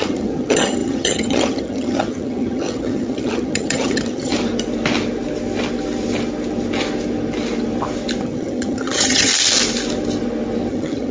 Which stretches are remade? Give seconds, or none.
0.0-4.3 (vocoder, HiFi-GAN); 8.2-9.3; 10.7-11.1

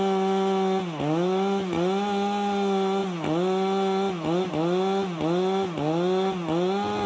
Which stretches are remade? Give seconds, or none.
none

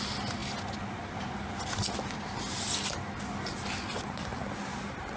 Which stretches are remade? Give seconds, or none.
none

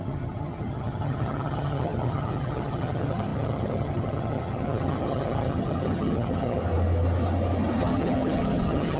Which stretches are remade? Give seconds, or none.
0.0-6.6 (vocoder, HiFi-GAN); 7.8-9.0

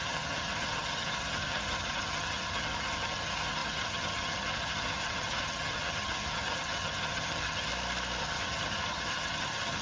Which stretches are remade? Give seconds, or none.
0.0-7.7 (vocoder, HiFi-GAN); 8.2-9.8

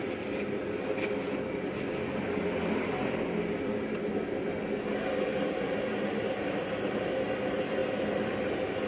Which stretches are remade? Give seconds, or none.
none